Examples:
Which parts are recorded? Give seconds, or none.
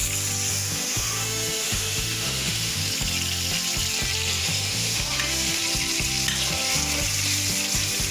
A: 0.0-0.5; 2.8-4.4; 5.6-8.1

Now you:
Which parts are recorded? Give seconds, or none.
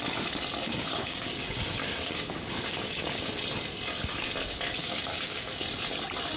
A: 0.0-0.6; 3.3-4.8; 5.6-6.4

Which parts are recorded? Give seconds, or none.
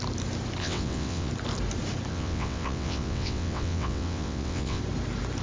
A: 0.0-0.6; 1.3-2.1; 4.8-5.4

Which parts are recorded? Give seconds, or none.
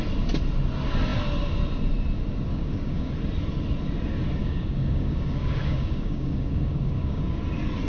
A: 0.0-2.5; 3.1-4.4; 7.4-7.9